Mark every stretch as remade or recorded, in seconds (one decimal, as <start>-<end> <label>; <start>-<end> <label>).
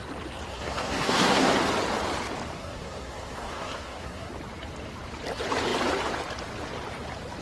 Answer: 0.0-0.5 recorded; 0.5-1.5 remade; 1.5-2.6 recorded; 2.6-4.3 remade; 4.3-7.4 recorded